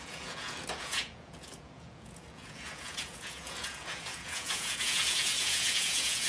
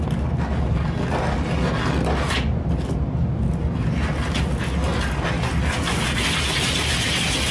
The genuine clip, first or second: second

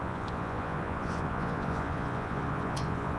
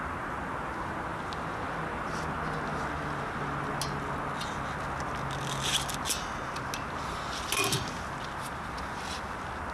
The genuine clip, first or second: second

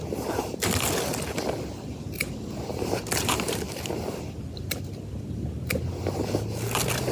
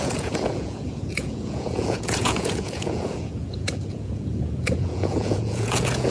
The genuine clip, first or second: first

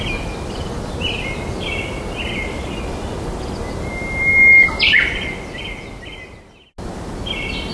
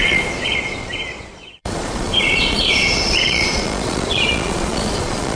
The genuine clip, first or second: first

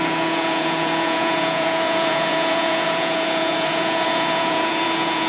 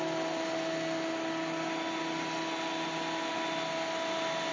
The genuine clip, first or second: second